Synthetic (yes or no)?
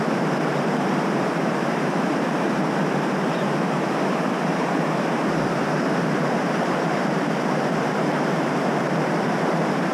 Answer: yes